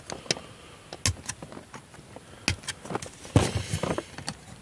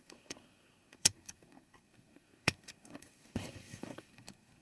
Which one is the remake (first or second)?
second